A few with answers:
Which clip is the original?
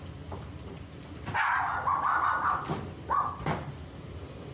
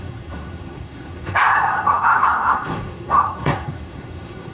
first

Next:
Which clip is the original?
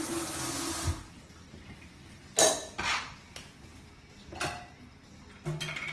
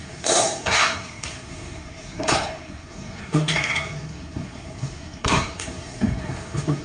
first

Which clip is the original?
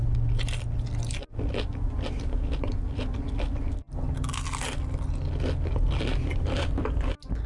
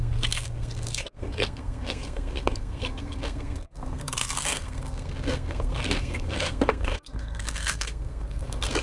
first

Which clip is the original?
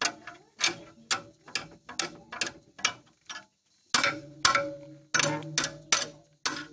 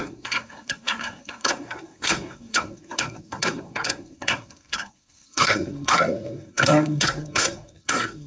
first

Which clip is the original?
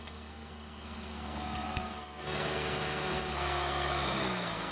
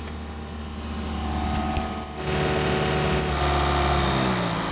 second